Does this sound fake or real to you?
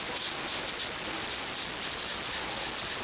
real